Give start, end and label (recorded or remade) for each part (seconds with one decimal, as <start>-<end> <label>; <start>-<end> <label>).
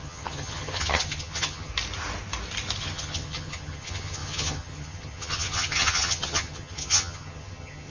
0.0-1.7 remade; 1.7-2.8 recorded; 2.8-7.9 remade